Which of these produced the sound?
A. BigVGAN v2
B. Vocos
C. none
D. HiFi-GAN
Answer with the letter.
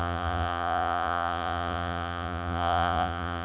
B